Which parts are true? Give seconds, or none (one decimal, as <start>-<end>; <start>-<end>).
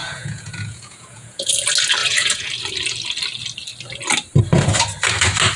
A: 1.5-2.0; 2.5-5.6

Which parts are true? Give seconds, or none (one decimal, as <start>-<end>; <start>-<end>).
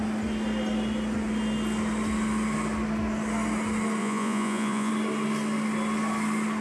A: 0.0-4.0; 4.9-6.6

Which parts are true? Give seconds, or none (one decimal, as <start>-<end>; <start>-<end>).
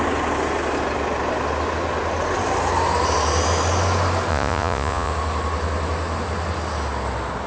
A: 0.0-4.3; 5.1-7.5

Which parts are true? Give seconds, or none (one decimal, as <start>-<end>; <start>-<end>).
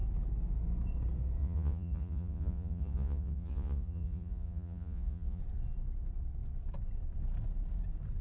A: 0.0-1.4; 5.4-8.2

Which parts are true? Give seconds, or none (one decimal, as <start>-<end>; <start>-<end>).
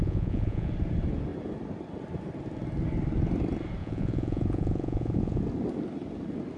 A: 0.7-3.8; 5.4-6.6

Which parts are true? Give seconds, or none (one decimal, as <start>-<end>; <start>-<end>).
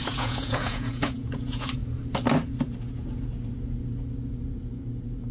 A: 1.8-5.3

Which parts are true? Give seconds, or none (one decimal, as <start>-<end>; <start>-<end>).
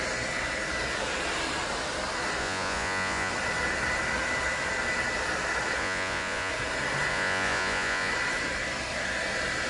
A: 0.0-2.4; 3.3-5.8; 6.5-7.1; 8.1-9.7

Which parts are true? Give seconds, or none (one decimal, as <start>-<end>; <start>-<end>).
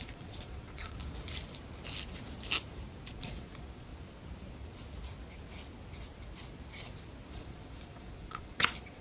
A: 1.0-3.1; 3.9-7.3